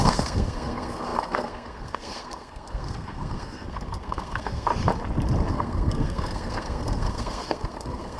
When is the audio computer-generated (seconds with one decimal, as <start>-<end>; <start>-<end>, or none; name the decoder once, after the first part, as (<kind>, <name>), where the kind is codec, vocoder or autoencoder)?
0.0-4.7 (codec, SNAC); 5.5-8.2